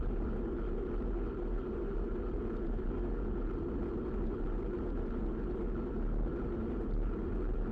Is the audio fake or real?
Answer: real